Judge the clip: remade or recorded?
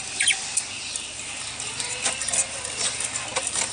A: recorded